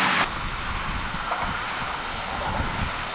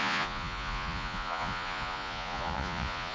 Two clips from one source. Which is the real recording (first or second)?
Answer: first